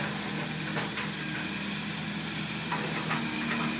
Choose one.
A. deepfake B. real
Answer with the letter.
B